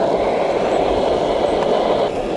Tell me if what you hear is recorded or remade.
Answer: recorded